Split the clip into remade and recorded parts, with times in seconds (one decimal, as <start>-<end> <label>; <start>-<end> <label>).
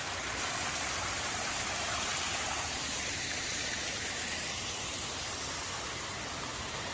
0.0-6.9 remade